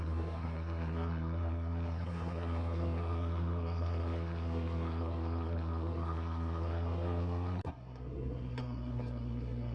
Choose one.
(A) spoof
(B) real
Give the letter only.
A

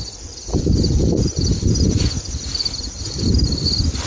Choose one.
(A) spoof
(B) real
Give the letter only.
A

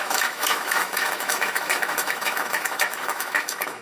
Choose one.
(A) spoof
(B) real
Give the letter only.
A